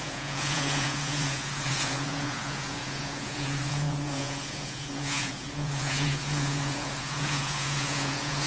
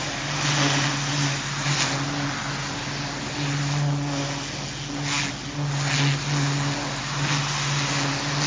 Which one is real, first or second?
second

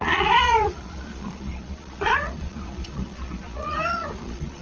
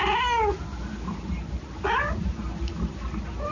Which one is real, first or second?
second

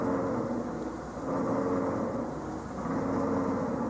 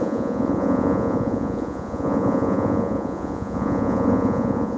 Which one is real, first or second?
first